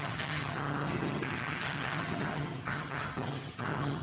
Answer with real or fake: fake